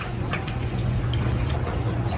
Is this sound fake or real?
fake